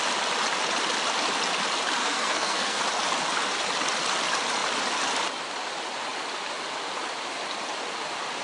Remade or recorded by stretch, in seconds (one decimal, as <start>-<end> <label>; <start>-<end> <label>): 0.0-2.0 recorded; 2.0-2.8 remade; 2.8-8.4 recorded